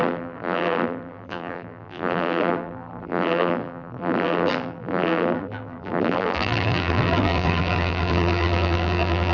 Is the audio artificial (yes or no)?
yes